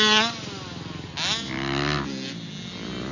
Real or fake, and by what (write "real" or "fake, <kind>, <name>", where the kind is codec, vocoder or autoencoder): real